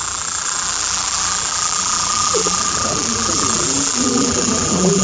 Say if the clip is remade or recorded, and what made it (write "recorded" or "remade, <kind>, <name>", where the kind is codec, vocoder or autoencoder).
remade, vocoder, BigVGAN v2